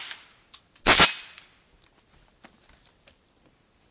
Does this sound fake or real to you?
real